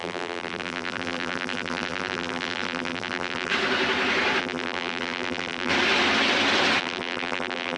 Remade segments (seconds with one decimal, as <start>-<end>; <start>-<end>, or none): 0.0-3.5; 4.4-5.7; 6.8-7.8